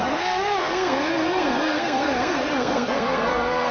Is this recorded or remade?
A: remade